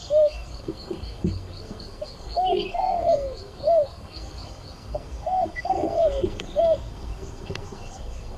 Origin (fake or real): fake